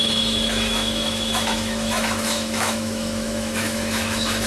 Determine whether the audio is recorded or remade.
remade